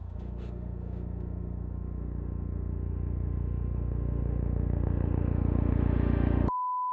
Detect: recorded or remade remade